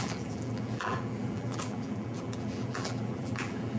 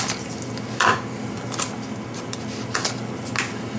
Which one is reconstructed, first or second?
first